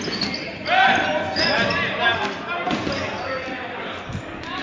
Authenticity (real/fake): real